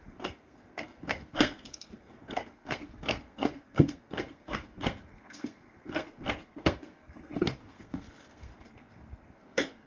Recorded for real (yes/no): no